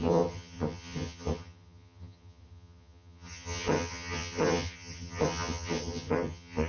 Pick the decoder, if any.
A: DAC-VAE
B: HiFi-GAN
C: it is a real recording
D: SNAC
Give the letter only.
B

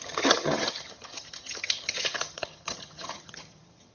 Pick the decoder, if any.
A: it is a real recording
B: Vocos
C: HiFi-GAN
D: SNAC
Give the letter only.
C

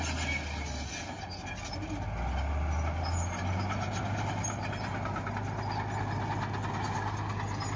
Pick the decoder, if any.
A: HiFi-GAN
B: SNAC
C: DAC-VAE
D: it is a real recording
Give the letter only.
D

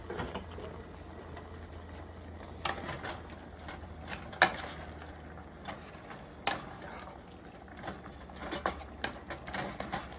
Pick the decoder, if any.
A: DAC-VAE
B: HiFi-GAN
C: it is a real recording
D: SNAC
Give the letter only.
C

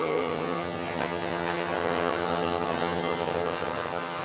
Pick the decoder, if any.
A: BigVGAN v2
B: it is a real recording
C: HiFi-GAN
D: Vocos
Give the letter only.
C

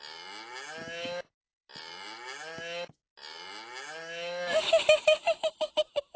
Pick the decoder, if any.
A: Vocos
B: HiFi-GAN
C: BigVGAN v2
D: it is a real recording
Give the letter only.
D